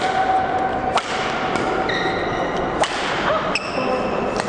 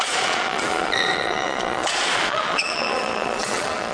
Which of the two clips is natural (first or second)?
first